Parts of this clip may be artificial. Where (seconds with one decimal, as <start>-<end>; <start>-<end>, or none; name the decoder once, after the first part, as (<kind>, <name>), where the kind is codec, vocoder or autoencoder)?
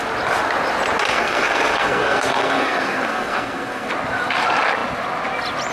1.1-3.9 (codec, SNAC)